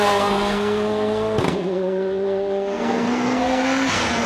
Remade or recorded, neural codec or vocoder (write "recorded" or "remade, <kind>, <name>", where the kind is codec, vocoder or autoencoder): remade, codec, SNAC